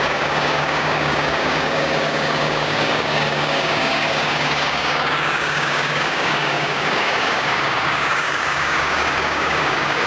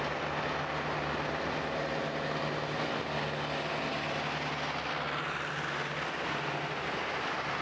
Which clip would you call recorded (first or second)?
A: second